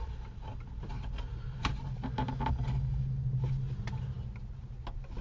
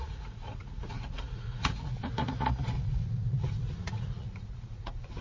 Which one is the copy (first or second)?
second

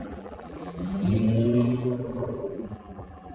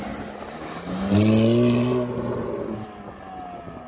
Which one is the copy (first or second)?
first